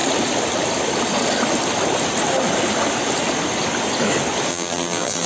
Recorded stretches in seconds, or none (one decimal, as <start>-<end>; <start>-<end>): 0.0-4.5